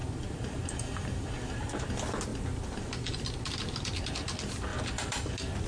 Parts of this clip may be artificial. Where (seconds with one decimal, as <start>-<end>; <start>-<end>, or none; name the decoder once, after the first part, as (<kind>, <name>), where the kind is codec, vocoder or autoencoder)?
0.0-1.8 (vocoder, BigVGAN v2); 4.7-5.3